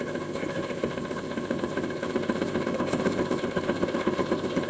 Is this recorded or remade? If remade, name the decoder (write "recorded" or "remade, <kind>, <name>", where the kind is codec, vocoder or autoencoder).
remade, codec, ZipCodec